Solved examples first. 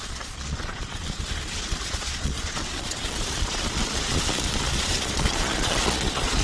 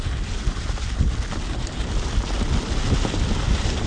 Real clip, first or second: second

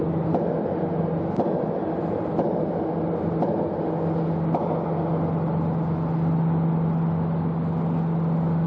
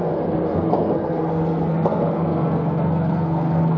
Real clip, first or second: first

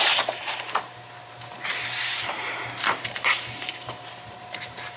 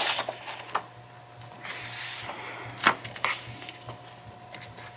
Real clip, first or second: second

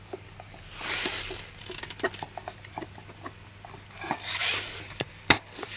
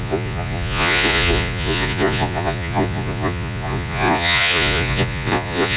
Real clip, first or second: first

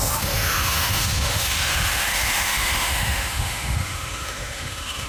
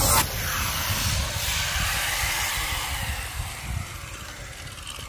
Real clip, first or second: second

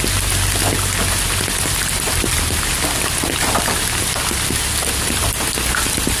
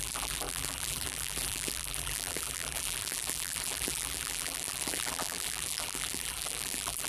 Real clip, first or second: first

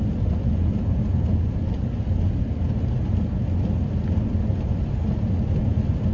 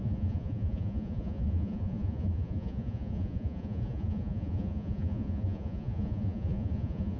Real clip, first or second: first